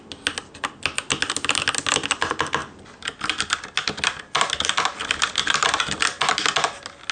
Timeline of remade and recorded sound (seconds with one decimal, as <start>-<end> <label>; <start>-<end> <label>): 0.0-7.1 recorded